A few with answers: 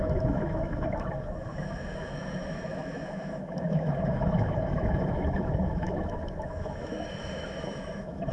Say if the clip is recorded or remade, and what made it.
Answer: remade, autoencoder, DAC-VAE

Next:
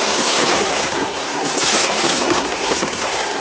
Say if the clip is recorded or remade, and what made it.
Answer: remade, codec, SNAC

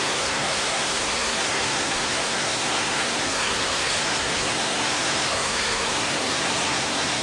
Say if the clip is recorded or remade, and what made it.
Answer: remade, codec, SNAC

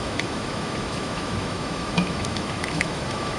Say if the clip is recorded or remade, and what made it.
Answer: remade, autoencoder, DAC-VAE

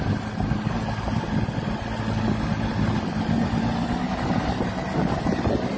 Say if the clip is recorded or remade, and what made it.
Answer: recorded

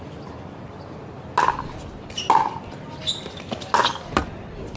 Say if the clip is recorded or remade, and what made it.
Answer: recorded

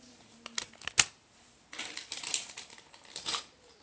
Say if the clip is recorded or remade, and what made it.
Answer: recorded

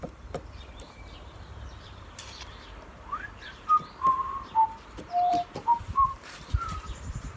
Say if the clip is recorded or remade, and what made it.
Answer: remade, vocoder, BigVGAN v2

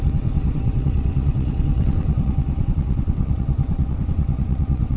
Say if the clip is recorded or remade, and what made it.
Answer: remade, vocoder, WaveNeXt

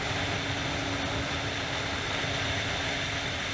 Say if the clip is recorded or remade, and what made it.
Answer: recorded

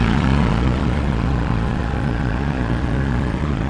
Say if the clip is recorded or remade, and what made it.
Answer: remade, vocoder, Vocos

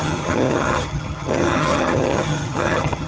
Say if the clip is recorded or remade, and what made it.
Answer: remade, vocoder, HiFi-GAN